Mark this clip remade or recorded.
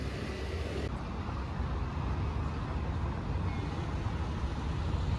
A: recorded